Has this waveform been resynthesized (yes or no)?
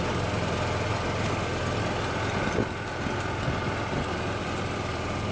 no